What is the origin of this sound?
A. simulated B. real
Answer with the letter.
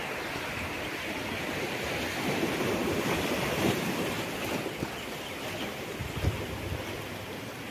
B